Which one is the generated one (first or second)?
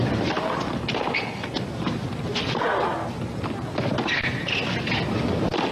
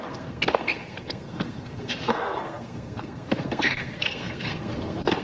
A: second